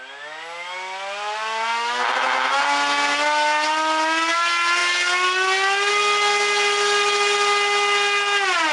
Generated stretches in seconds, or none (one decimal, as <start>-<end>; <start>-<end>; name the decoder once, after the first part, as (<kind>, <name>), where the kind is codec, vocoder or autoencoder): none